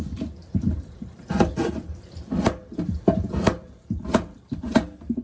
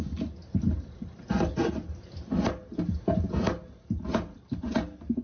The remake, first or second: first